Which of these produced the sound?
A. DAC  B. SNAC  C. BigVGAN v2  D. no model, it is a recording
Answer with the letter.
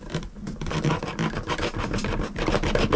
D